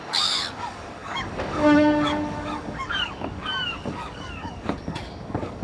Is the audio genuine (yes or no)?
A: no